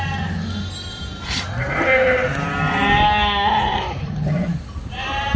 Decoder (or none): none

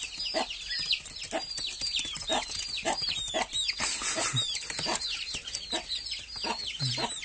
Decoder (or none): none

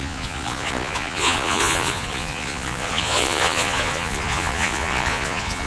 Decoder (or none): vocoder, Vocos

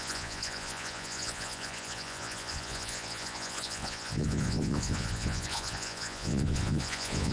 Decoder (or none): vocoder, Vocos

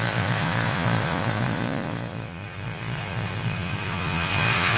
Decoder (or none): vocoder, Vocos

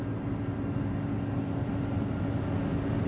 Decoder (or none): none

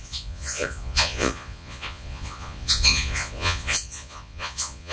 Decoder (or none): vocoder, Vocos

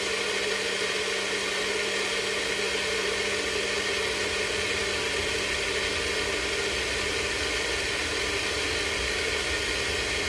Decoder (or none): none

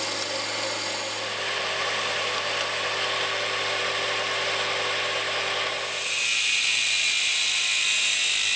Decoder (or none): none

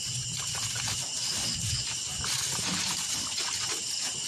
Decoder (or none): none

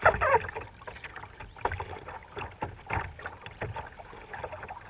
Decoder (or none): none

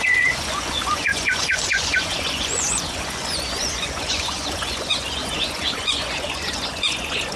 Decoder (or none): vocoder, Vocos